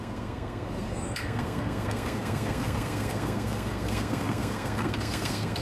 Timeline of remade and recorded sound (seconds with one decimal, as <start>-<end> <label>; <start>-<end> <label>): 0.0-5.6 remade